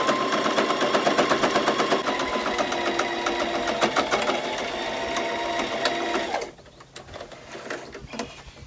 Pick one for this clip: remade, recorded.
recorded